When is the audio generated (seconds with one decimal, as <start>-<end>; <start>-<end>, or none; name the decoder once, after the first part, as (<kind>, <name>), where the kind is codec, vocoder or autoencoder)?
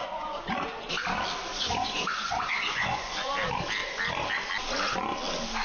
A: 0.0-1.0 (vocoder, Vocos); 1.5-3.3